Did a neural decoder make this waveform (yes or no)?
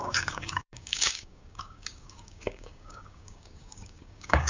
yes